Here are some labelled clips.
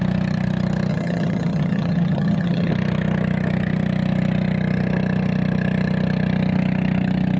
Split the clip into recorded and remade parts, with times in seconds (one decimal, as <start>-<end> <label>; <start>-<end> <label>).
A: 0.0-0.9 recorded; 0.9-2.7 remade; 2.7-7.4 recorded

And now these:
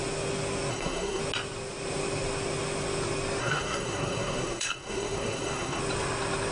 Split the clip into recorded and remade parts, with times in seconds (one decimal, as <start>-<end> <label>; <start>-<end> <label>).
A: 0.0-0.7 recorded; 0.7-1.2 remade; 1.2-3.4 recorded; 3.4-5.8 remade; 5.8-6.5 recorded

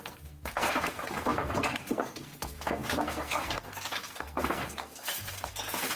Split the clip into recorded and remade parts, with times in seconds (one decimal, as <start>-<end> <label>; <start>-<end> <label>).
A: 0.0-6.0 remade

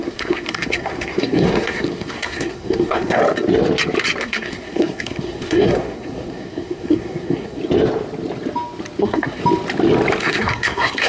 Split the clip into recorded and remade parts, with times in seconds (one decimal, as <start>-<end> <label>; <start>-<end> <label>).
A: 0.0-3.2 remade; 3.2-4.2 recorded; 4.2-7.6 remade; 7.6-9.0 recorded; 9.0-9.4 remade; 9.4-10.2 recorded; 10.2-11.1 remade

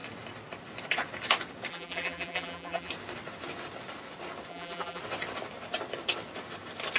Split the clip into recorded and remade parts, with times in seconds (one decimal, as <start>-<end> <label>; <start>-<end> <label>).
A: 0.0-1.7 recorded; 1.7-2.9 remade; 2.9-4.5 recorded; 4.5-5.0 remade; 5.0-7.0 recorded